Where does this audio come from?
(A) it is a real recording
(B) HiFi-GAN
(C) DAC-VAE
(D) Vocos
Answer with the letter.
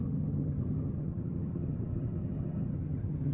B